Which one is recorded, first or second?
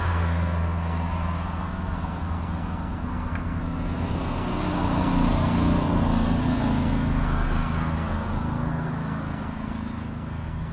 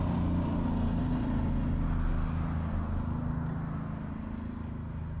second